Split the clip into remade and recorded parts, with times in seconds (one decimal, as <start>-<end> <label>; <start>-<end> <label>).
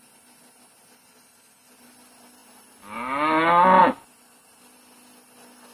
0.0-5.7 recorded